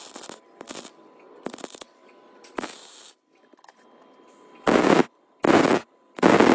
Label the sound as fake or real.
real